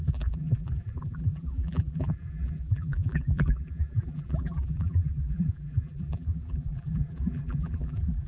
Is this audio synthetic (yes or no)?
yes